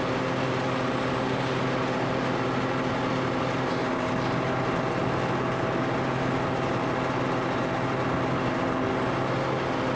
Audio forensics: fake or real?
real